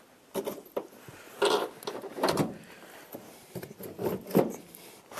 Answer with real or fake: real